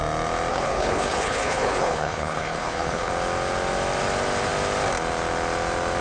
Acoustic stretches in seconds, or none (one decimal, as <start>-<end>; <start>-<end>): 0.0-0.5; 3.1-6.0